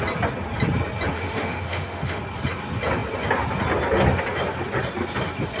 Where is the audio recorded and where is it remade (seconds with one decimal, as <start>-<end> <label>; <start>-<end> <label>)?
0.0-1.1 recorded; 1.1-2.2 remade; 2.2-5.6 recorded